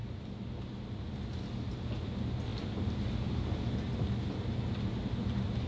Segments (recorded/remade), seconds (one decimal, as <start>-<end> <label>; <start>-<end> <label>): 0.0-5.7 recorded